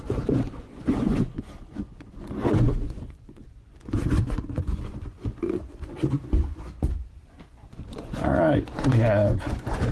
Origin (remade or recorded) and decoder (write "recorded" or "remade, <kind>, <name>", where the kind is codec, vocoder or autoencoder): remade, vocoder, Vocos